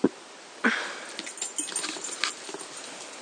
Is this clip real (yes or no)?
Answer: yes